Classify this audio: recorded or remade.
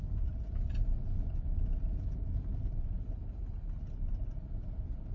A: recorded